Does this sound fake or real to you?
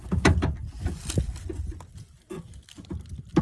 real